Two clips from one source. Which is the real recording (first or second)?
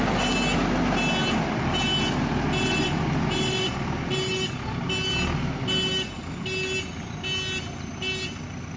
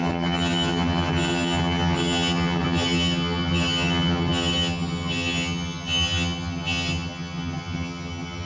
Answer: first